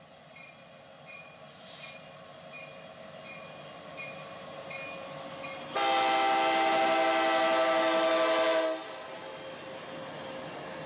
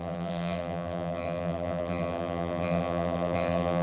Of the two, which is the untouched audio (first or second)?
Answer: first